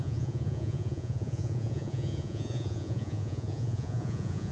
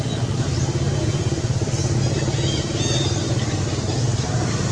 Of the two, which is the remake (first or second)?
first